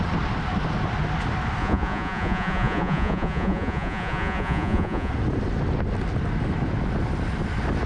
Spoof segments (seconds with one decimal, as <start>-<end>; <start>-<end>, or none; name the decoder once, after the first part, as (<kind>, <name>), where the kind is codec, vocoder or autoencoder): 1.6-5.1 (vocoder, Vocos)